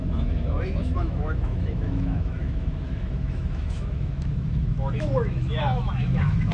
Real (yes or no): no